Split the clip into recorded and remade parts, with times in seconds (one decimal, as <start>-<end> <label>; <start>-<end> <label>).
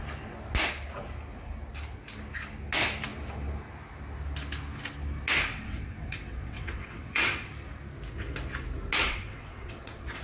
0.0-5.5 recorded; 5.5-7.5 remade; 7.5-9.0 recorded; 9.0-10.2 remade